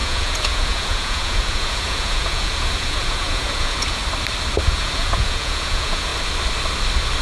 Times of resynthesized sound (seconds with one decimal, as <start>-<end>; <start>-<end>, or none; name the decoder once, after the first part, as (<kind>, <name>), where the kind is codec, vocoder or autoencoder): 0.0-4.0 (vocoder, Vocos); 4.6-6.1